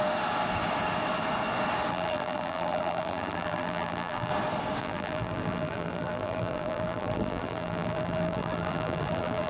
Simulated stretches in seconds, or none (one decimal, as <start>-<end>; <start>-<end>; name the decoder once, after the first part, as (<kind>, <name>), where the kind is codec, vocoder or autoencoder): 1.9-4.3 (vocoder, BigVGAN v2); 4.8-9.5